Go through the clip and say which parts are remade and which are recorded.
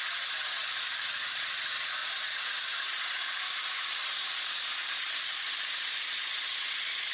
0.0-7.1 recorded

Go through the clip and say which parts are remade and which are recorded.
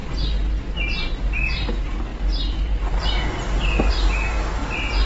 0.0-5.1 recorded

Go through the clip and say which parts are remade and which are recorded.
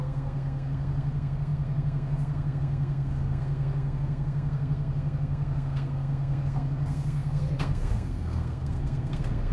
0.0-9.5 remade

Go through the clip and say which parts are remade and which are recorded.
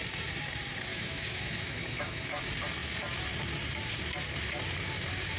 0.0-0.9 recorded; 0.9-2.4 remade; 2.4-5.4 recorded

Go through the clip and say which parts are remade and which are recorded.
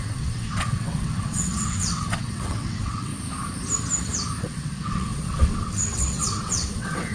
0.0-3.1 remade; 3.1-4.4 recorded; 4.4-7.1 remade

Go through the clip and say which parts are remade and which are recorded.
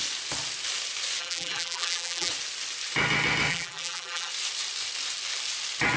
0.0-1.2 recorded; 1.2-2.3 remade; 2.3-3.5 recorded; 3.5-4.3 remade; 4.3-6.0 recorded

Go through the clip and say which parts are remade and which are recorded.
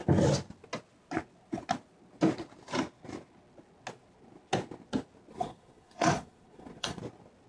0.0-5.3 recorded; 5.3-7.0 remade; 7.0-7.5 recorded